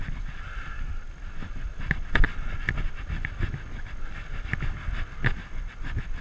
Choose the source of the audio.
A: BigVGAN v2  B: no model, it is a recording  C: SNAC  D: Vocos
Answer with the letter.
B